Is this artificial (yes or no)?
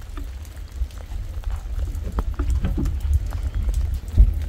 no